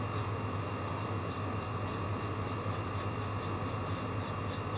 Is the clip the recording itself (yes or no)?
yes